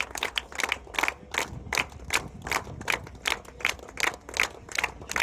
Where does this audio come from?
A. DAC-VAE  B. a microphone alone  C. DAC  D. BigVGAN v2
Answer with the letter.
B